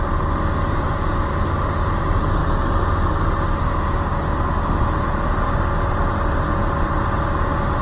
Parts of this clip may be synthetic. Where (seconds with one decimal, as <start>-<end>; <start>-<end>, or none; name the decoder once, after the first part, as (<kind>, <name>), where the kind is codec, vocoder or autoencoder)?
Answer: none